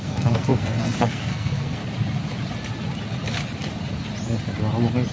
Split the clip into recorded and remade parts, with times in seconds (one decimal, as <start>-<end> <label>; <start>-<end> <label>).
0.0-1.8 remade; 1.8-5.1 recorded